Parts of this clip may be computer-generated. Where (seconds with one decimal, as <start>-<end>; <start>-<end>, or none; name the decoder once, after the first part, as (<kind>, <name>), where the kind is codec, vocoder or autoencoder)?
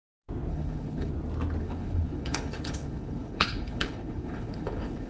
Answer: 0.5-1.1 (codec, HILCodec); 1.6-5.1